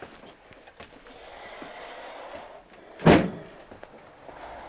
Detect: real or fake real